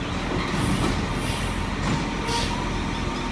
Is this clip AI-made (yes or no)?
no